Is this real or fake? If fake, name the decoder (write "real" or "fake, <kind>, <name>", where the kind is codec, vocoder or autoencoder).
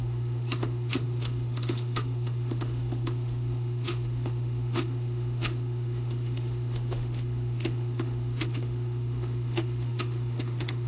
fake, autoencoder, DAC-VAE